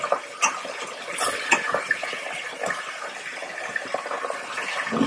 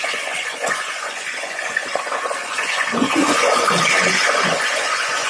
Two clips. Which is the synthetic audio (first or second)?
second